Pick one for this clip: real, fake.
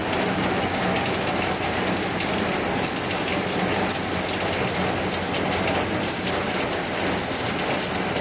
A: real